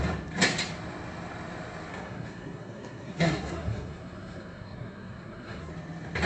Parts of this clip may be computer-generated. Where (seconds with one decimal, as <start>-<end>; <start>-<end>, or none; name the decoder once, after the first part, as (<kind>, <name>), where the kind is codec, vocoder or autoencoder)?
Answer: 1.9-5.7 (codec, SNAC)